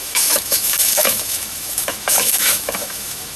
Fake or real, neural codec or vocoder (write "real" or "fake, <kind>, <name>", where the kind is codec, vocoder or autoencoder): fake, autoencoder, DAC-VAE